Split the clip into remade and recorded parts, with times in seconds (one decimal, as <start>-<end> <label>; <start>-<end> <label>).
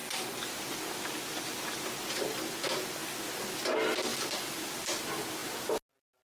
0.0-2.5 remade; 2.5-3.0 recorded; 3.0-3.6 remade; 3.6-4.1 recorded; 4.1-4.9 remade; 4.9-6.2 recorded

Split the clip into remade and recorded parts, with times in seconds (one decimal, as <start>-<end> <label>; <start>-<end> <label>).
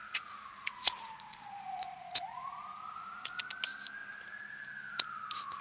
0.0-3.4 remade; 3.4-5.6 recorded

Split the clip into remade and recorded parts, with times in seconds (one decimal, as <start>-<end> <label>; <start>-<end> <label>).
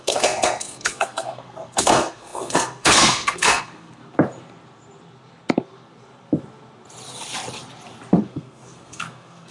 0.0-4.0 remade; 4.0-8.2 recorded; 8.2-9.5 remade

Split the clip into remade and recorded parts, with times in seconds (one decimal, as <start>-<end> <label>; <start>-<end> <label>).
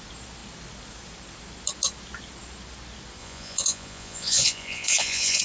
0.0-3.2 recorded; 3.2-5.4 remade